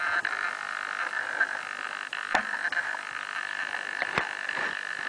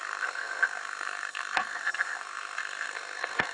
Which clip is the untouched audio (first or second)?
first